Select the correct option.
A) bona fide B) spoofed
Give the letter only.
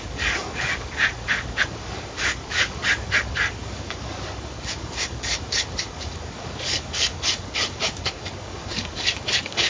B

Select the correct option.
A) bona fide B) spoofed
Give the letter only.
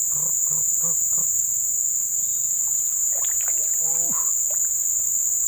A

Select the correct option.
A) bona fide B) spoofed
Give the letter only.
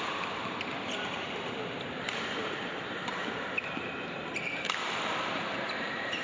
B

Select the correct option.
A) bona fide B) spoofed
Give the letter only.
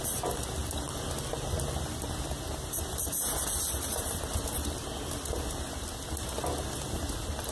A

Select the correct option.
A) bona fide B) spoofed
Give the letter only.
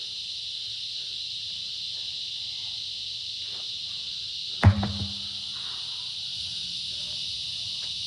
A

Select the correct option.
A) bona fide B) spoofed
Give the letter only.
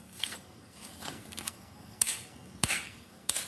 B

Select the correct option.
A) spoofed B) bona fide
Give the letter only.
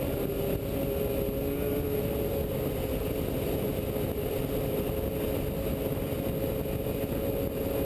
B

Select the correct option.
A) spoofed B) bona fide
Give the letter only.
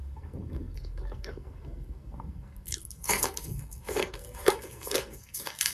A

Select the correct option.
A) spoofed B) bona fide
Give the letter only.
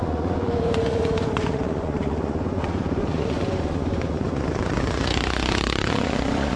A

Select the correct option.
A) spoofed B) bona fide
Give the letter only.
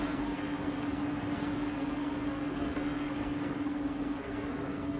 A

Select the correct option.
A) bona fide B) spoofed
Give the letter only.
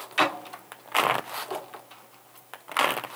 A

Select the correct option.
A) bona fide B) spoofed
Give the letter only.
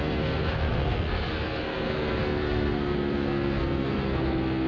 B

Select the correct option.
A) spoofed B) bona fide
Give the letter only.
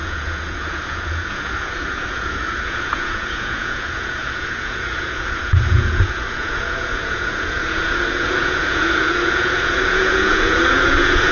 A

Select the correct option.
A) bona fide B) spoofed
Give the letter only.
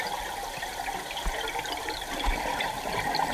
A